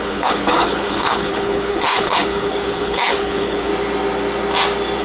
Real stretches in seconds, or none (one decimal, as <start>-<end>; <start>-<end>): 3.7-5.0